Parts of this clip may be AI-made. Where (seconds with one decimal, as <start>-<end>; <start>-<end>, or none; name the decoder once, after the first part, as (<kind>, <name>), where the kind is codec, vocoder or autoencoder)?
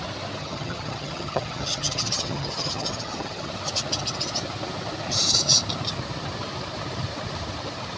0.4-3.5 (vocoder, HiFi-GAN)